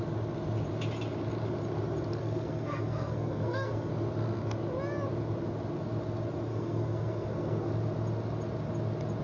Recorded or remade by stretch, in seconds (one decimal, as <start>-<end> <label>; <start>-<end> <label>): 0.0-2.2 recorded; 2.2-3.9 remade; 3.9-6.5 recorded; 6.5-7.7 remade; 7.7-9.2 recorded